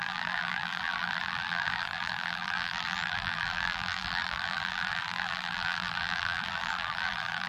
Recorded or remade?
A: remade